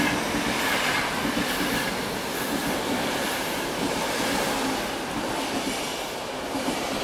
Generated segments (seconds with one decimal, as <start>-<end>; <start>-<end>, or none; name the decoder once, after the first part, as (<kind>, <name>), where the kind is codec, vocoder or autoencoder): 2.6-3.3 (vocoder, BigVGAN v2); 5.9-7.0